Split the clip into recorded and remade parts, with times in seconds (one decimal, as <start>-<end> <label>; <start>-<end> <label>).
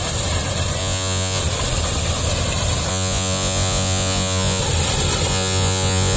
0.0-0.8 recorded; 0.8-1.4 remade; 1.4-2.9 recorded; 2.9-4.6 remade; 4.6-5.3 recorded; 5.3-6.2 remade